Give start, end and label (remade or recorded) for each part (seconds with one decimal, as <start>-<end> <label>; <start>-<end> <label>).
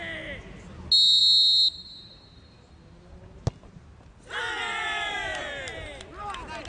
0.0-6.7 recorded